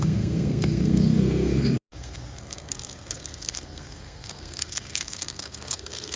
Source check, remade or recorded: remade